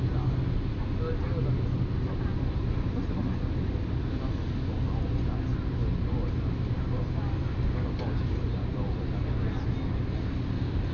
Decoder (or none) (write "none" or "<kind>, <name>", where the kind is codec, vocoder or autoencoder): none